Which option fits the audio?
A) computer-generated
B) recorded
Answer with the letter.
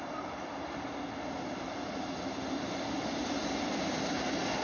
B